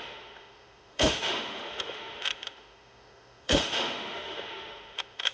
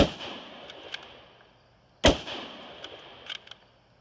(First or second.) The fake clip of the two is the first